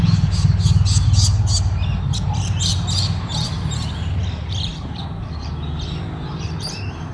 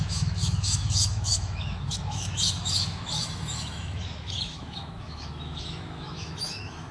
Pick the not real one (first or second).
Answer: second